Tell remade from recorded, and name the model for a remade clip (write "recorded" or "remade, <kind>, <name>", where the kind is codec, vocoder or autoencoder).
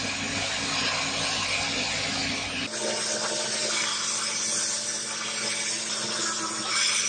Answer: recorded